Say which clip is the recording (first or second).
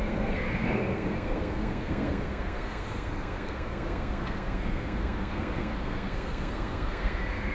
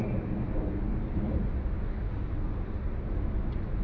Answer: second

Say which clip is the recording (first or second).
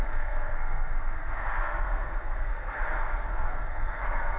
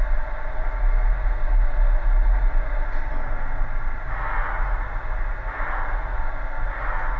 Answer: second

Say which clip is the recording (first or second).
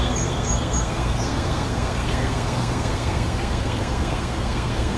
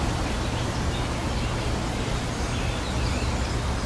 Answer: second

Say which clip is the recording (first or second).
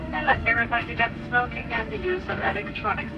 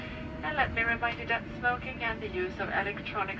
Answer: second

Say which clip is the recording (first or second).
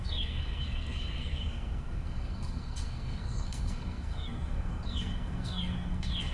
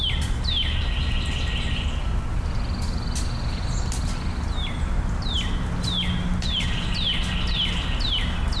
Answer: second